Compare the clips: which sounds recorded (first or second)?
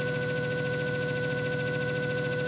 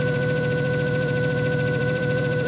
first